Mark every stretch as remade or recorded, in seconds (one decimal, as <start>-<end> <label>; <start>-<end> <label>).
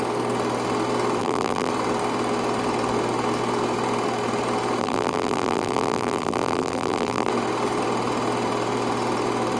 0.0-1.2 recorded; 1.2-1.7 remade; 1.7-4.8 recorded; 4.8-7.3 remade; 7.3-9.6 recorded